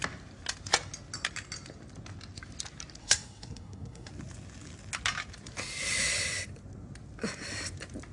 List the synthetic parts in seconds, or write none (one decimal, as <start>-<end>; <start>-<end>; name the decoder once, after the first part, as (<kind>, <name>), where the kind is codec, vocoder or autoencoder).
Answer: 3.0-4.1 (codec, SNAC)